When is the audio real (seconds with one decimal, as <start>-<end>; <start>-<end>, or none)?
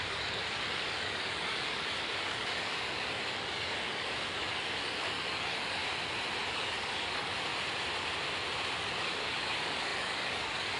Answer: 5.8-6.5; 7.5-8.8